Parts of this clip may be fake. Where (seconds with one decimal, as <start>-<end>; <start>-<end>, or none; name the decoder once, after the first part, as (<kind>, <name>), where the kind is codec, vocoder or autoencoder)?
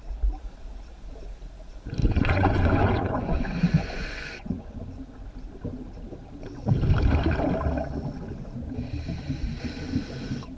2.0-4.8 (vocoder, Vocos)